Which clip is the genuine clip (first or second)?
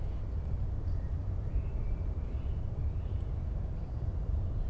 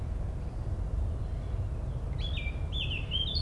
second